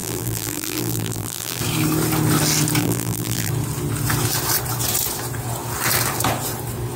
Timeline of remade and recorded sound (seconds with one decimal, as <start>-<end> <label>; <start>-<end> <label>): 0.0-1.6 remade; 1.6-2.8 recorded; 2.8-3.5 remade; 3.5-7.0 recorded